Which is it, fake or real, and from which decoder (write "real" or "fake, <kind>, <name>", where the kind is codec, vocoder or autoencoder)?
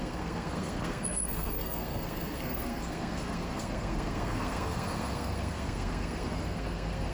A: fake, codec, SNAC